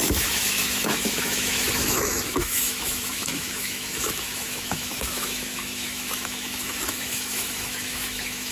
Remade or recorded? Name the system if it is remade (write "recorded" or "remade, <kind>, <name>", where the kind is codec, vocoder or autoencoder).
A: remade, autoencoder, DAC-VAE